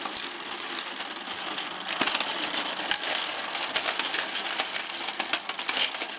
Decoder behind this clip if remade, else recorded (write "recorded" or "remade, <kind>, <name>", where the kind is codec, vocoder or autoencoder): recorded